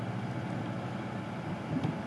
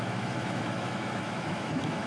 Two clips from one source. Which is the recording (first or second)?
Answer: first